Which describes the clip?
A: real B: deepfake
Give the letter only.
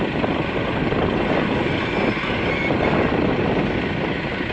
A